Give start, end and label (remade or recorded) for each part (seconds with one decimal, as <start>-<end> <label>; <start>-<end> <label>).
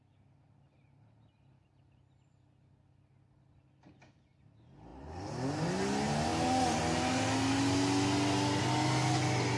0.0-9.6 recorded